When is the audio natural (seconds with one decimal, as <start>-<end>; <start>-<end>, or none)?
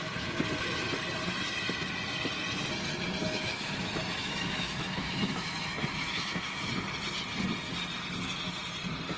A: 0.0-3.2; 6.7-9.2